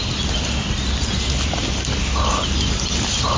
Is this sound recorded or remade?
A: recorded